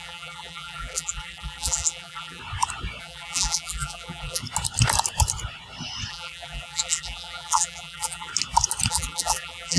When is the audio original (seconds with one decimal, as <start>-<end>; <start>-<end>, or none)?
2.4-3.0; 4.4-6.1; 8.3-8.9